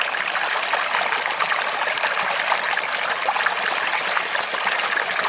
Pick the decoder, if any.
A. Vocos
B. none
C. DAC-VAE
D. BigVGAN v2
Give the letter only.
B